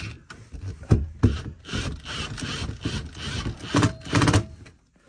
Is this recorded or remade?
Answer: recorded